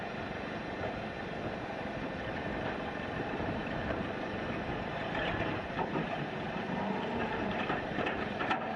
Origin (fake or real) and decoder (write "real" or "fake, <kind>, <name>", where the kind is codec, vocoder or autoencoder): fake, vocoder, BigVGAN v2